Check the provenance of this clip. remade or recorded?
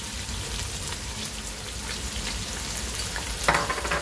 recorded